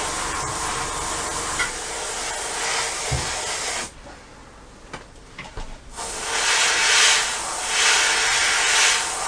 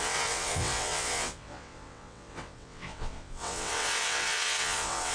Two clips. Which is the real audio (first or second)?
first